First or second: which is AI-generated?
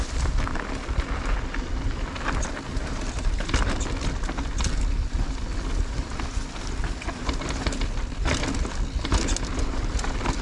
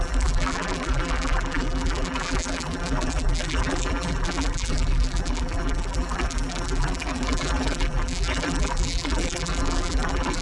second